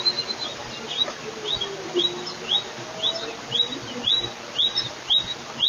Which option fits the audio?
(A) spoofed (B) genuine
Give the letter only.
B